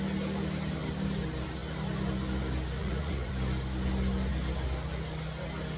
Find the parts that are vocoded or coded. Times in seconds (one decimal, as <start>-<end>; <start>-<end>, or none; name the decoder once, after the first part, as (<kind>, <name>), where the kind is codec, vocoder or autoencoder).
2.8-3.3 (vocoder, Vocos)